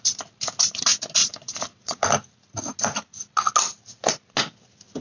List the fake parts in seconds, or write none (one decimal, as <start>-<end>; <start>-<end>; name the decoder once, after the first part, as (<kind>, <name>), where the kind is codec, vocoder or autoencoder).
1.2-2.1 (vocoder, Vocos)